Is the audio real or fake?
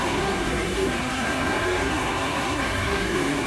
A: fake